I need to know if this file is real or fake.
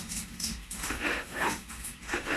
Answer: fake